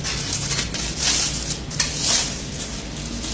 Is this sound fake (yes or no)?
no